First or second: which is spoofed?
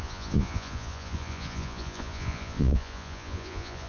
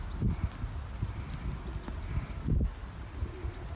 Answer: first